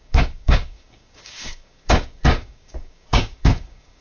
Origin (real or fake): fake